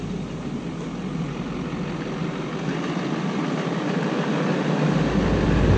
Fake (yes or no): no